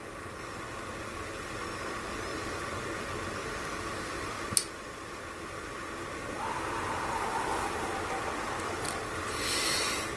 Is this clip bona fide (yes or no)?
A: yes